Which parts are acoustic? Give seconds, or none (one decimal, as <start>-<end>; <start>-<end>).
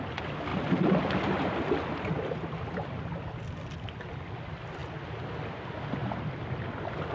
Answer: 0.0-7.1